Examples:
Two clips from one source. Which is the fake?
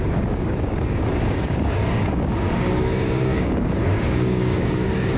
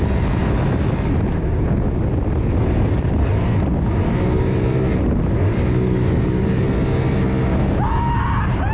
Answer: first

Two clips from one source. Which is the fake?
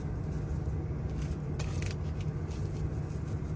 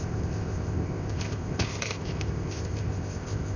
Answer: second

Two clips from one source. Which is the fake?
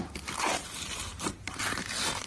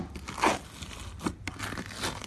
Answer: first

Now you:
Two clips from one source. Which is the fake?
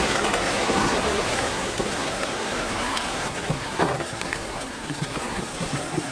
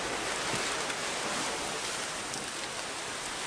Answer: first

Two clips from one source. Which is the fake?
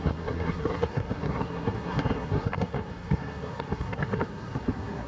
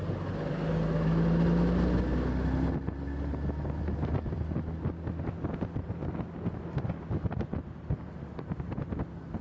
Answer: first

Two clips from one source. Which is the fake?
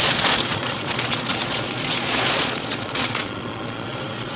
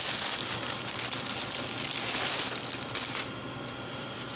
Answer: first